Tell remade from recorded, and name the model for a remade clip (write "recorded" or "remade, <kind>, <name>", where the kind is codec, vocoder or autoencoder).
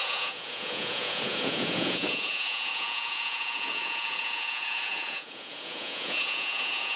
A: remade, vocoder, Vocos